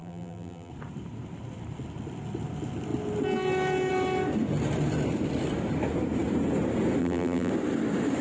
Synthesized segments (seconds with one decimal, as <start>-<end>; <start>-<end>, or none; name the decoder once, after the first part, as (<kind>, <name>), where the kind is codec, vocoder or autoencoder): 0.0-0.7 (vocoder, BigVGAN v2); 7.0-7.5